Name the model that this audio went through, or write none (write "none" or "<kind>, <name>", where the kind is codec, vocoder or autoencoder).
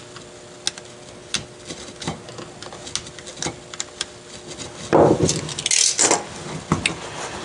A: none